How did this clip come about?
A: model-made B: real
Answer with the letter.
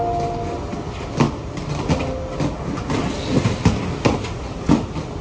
B